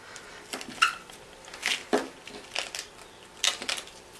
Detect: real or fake real